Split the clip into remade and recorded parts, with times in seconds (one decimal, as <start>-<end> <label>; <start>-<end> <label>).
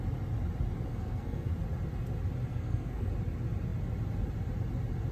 0.0-0.9 recorded; 0.9-1.5 remade; 1.5-2.5 recorded; 2.5-3.1 remade; 3.1-5.1 recorded